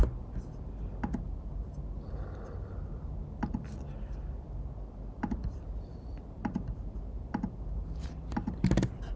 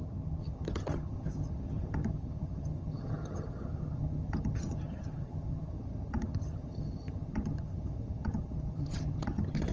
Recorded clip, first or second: first